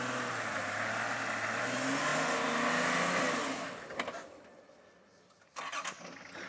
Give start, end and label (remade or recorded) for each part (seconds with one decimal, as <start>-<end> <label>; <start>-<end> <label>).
0.0-6.5 recorded